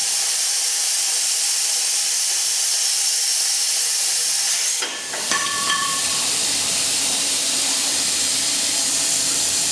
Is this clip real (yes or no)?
no